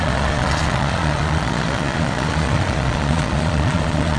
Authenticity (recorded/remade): remade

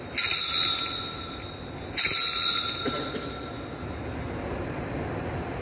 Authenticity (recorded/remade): recorded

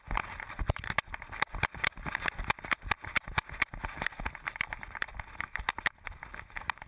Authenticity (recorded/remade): recorded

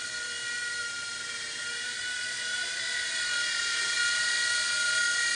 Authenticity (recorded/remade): remade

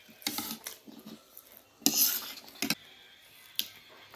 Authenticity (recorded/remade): recorded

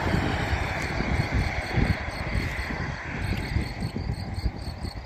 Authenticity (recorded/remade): recorded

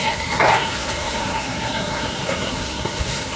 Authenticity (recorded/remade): remade